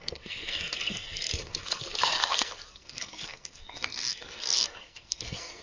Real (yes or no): no